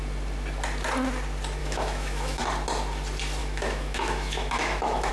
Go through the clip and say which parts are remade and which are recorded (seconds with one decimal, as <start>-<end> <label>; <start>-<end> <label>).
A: 0.0-1.6 recorded; 1.6-2.4 remade; 2.4-3.4 recorded; 3.4-5.1 remade